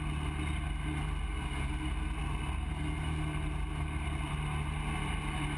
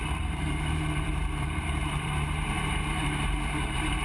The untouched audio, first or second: first